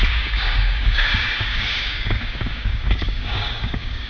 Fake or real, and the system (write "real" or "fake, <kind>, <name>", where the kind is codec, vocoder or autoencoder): fake, codec, DAC